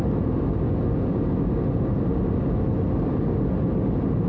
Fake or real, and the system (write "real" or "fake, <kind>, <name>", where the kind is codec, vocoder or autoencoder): real